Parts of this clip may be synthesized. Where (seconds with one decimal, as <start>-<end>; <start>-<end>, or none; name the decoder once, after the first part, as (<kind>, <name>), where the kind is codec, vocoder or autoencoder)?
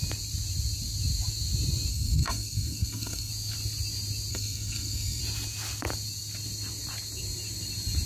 1.9-3.3 (codec, SNAC); 4.3-5.2